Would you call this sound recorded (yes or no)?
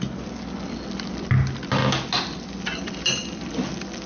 yes